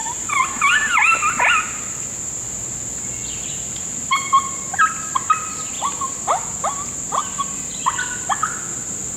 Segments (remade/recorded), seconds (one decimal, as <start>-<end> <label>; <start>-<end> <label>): 0.0-0.7 remade; 0.7-5.1 recorded; 5.1-5.7 remade; 5.7-9.2 recorded